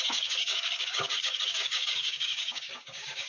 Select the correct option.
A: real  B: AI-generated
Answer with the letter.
B